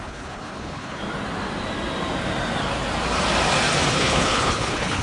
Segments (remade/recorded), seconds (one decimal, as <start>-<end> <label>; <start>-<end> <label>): 0.0-1.0 remade; 1.0-3.9 recorded; 3.9-5.0 remade